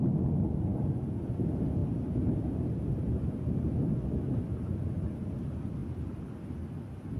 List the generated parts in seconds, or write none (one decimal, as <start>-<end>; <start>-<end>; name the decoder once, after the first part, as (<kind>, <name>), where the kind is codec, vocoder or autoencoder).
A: 5.8-6.5 (vocoder, BigVGAN v2)